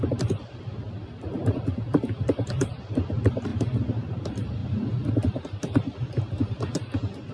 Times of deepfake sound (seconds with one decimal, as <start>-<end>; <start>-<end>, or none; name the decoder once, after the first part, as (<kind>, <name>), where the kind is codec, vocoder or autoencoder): 0.0-4.6 (vocoder, BigVGAN v2); 5.1-7.3